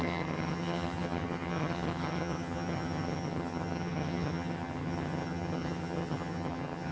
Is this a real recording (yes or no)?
no